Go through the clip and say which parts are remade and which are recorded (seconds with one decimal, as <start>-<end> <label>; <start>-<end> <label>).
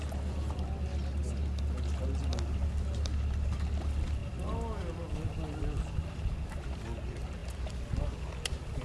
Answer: 0.0-4.2 recorded; 4.2-5.1 remade; 5.1-8.8 recorded